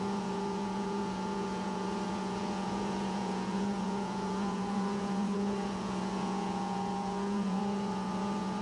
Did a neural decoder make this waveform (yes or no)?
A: yes